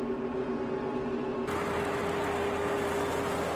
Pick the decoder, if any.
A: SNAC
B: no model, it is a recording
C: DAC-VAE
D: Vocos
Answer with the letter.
B